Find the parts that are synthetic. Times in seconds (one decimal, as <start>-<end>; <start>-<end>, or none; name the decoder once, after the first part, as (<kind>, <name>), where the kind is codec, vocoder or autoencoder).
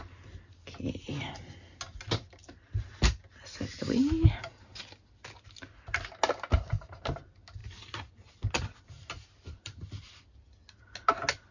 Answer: none